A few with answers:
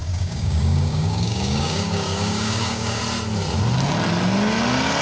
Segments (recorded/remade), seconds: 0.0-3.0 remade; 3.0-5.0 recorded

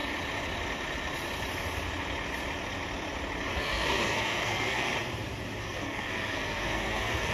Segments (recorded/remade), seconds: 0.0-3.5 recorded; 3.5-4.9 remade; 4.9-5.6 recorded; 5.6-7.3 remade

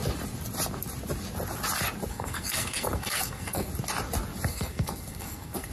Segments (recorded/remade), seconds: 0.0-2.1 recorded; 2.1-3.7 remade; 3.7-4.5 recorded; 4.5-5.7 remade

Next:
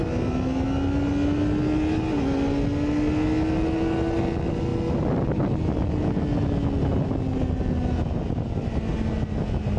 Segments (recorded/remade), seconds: 0.0-9.8 recorded